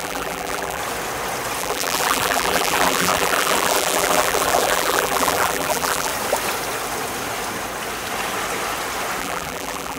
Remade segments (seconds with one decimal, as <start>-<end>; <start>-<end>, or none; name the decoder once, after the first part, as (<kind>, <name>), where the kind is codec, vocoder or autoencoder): 0.0-0.8 (vocoder, BigVGAN v2); 1.6-6.1; 9.2-10.0